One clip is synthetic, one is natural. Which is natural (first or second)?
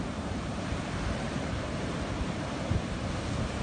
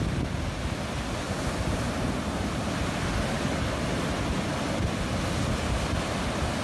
second